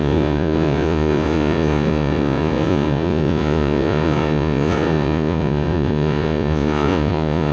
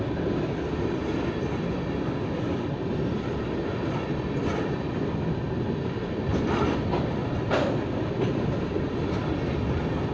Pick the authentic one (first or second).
second